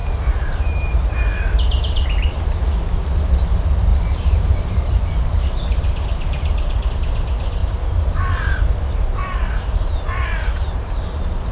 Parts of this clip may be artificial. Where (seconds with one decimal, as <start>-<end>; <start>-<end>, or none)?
0.0-3.0; 3.9-6.9; 7.6-10.9

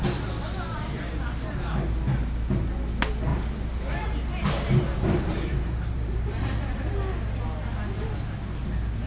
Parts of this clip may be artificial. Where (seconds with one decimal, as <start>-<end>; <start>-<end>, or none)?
3.3-6.9

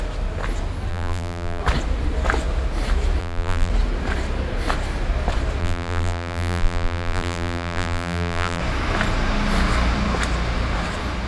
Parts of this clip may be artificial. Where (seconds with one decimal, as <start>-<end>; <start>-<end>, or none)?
0.9-1.6; 3.2-3.7; 5.6-8.6

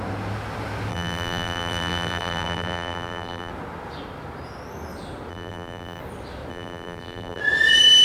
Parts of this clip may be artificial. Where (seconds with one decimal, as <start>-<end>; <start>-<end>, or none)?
0.9-3.5; 5.3-6.0; 6.5-7.4

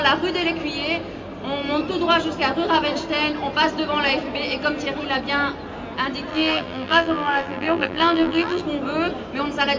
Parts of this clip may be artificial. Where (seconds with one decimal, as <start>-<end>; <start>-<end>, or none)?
6.3-8.6

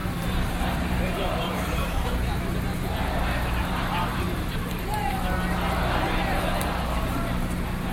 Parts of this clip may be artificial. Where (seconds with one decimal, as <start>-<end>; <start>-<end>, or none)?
0.0-2.3; 4.1-5.1